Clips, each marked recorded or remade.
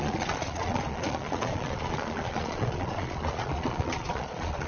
remade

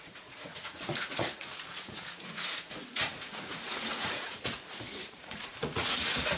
remade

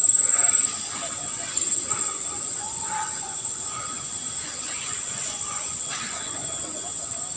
remade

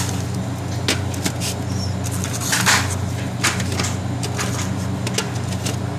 recorded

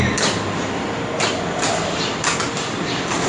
remade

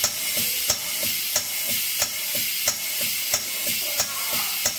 recorded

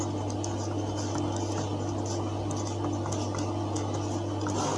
recorded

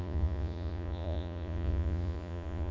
remade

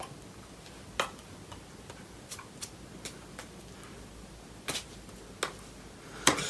recorded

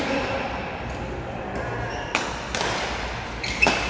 recorded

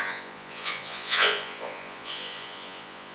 remade